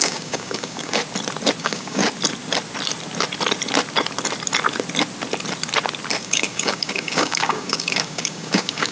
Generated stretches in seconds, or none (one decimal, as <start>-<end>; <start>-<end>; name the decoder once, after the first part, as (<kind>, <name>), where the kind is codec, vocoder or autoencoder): 0.0-1.0 (codec, DAC); 1.6-2.0; 6.2-8.9